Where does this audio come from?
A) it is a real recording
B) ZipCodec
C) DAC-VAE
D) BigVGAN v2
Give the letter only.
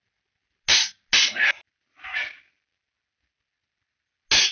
A